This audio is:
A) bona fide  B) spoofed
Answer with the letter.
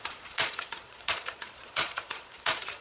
B